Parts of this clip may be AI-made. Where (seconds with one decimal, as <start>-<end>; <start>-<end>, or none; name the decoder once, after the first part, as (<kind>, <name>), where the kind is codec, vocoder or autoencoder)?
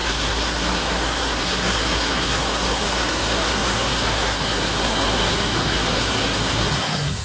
0.0-7.2 (codec, SNAC)